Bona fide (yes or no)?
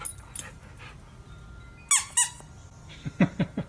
yes